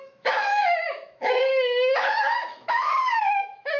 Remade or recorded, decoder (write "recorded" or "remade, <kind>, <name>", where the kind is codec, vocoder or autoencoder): remade, autoencoder, DAC-VAE